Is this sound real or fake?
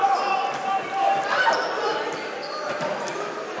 fake